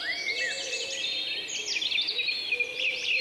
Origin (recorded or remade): recorded